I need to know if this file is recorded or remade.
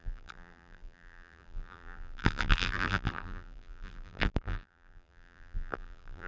remade